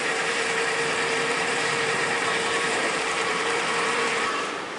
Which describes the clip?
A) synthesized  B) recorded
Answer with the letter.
A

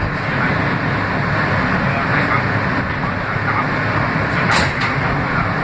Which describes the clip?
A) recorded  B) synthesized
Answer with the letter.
A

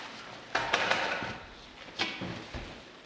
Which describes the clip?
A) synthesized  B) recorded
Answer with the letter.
B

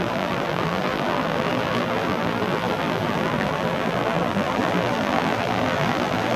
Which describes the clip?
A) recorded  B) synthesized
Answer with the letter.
B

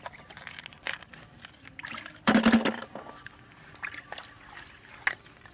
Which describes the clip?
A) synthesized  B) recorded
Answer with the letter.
B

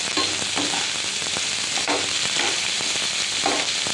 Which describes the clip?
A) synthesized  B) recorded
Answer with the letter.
B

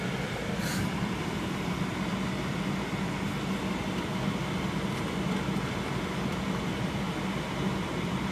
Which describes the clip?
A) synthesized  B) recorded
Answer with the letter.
B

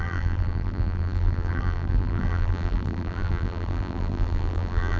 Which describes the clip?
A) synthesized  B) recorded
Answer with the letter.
A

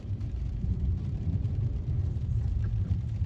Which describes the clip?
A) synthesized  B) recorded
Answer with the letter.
A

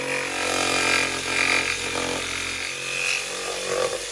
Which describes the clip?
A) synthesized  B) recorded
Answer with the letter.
B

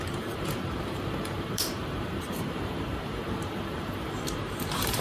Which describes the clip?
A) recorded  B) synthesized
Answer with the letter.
B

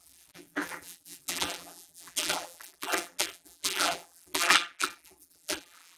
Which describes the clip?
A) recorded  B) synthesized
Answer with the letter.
B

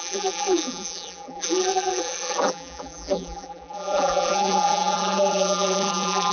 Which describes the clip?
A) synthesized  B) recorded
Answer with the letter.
A